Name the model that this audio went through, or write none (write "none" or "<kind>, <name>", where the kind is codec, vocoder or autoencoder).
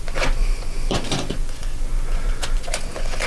vocoder, Vocos